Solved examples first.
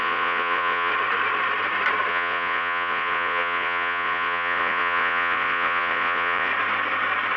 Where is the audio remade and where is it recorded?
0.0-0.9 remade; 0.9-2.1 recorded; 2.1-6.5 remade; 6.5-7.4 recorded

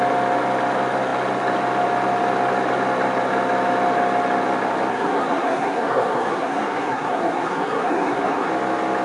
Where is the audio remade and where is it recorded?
0.0-4.9 recorded; 4.9-8.5 remade; 8.5-9.0 recorded

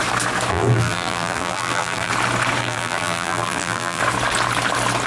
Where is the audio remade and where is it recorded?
0.0-0.5 recorded; 0.5-2.1 remade; 2.1-2.6 recorded; 2.6-4.0 remade; 4.0-5.1 recorded